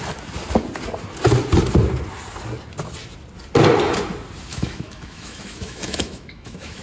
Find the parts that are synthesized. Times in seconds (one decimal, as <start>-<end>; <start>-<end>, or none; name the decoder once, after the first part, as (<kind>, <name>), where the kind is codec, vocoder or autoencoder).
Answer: 4.5-6.8 (autoencoder, DAC-VAE)

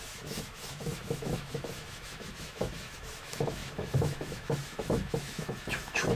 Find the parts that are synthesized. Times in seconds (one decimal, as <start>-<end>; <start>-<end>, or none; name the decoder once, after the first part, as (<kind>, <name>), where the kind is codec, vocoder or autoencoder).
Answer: 0.0-6.2 (autoencoder, DAC-VAE)

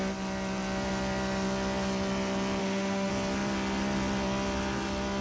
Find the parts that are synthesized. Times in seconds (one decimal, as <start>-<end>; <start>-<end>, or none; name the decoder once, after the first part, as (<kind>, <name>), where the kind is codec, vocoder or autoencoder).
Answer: 2.6-3.1 (autoencoder, DAC-VAE)

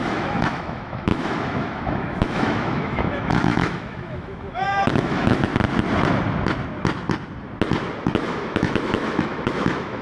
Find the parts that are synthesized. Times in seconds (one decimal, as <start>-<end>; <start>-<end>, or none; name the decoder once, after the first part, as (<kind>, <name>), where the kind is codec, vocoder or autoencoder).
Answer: 0.0-5.5 (autoencoder, DAC-VAE); 8.1-10.0